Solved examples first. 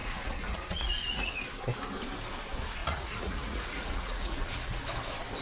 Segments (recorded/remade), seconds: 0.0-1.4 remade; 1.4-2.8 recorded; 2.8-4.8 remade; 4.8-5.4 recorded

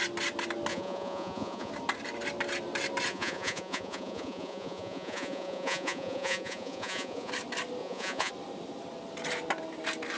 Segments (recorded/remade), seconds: 0.0-0.7 recorded; 0.7-1.7 remade; 1.7-3.1 recorded; 3.1-7.3 remade; 7.3-7.8 recorded; 7.8-8.3 remade; 8.3-10.2 recorded

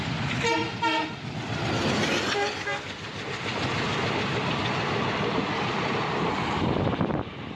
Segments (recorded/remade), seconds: 0.0-0.6 recorded; 0.6-1.7 remade; 1.7-7.6 recorded

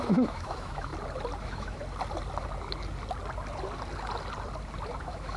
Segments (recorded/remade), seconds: 0.0-0.9 remade; 0.9-1.4 recorded; 1.4-1.8 remade; 1.8-5.0 recorded; 5.0-5.4 remade

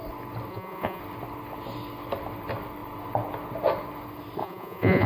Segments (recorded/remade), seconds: 0.0-0.5 recorded; 0.5-1.0 remade; 1.0-4.4 recorded; 4.4-5.1 remade

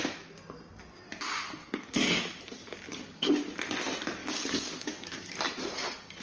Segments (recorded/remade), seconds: 0.0-1.6 recorded; 1.6-2.2 remade; 2.2-2.6 recorded; 2.6-3.3 remade; 3.3-4.2 recorded; 4.2-5.3 remade; 5.3-6.2 recorded

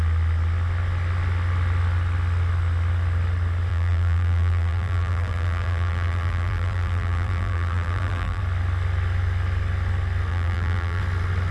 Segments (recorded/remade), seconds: 0.0-3.7 recorded; 3.7-8.4 remade; 8.4-10.3 recorded; 10.3-11.0 remade; 11.0-11.5 recorded